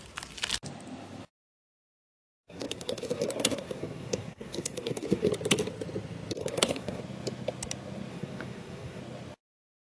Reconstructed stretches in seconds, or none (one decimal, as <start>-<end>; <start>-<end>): 1.9-5.3; 6.4-7.0; 8.1-9.0